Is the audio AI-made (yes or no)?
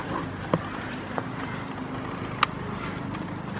no